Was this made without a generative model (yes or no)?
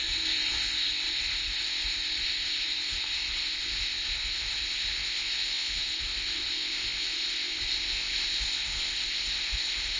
no